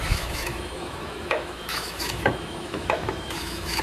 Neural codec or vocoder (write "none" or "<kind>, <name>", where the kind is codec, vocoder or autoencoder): autoencoder, DAC-VAE